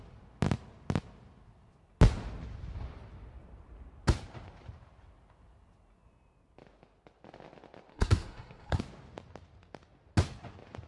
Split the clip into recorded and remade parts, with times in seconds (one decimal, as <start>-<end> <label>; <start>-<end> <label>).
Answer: 0.0-7.9 recorded; 7.9-8.8 remade; 8.8-10.9 recorded